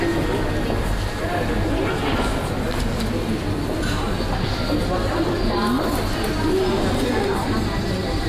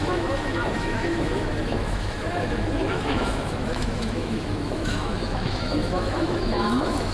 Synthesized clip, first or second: second